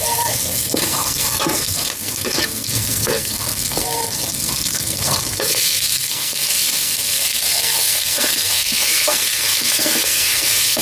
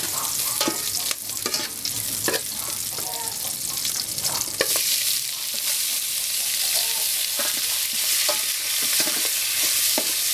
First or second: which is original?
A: second